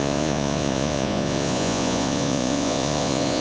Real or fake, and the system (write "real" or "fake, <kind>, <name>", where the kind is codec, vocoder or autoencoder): fake, vocoder, Vocos